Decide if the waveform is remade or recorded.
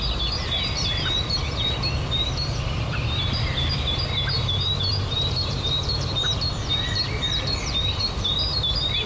remade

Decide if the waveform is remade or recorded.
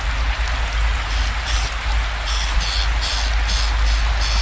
recorded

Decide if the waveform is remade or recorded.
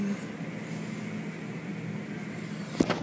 recorded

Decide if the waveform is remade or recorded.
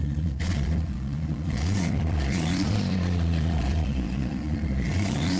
remade